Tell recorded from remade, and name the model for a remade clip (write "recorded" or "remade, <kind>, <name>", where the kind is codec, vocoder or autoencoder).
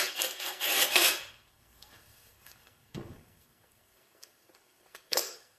remade, codec, SNAC